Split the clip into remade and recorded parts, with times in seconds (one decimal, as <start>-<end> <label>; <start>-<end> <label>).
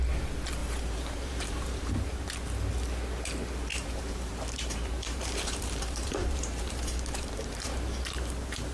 0.0-0.6 recorded; 0.6-1.9 remade; 1.9-3.7 recorded; 3.7-8.7 remade